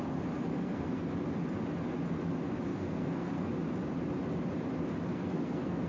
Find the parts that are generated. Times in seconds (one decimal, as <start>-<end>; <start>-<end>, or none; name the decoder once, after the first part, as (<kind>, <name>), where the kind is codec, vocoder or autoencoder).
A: 0.5-1.1 (codec, SNAC); 2.7-3.5; 5.1-5.9